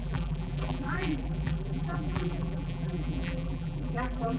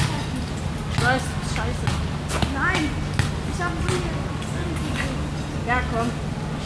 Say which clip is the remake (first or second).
first